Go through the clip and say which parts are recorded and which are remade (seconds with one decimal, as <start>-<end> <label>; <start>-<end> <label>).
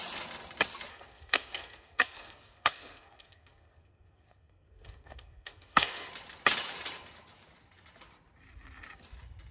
0.0-0.9 recorded; 0.9-6.1 remade; 6.1-9.5 recorded